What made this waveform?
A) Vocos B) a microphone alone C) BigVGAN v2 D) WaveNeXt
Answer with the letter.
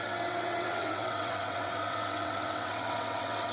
D